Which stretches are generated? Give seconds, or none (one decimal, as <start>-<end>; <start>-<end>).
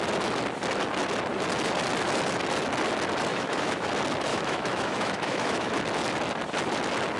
3.3-3.9; 4.3-5.8